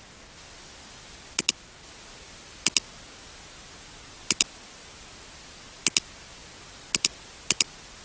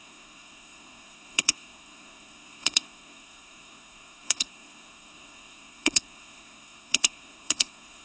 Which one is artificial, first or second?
second